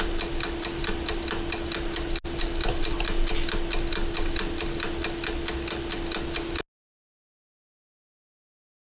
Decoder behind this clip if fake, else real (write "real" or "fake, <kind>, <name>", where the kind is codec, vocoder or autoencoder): real